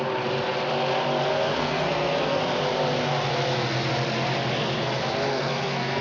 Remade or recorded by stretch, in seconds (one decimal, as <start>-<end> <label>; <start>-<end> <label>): 0.0-1.3 recorded; 1.3-2.4 remade; 2.4-5.3 recorded; 5.3-6.0 remade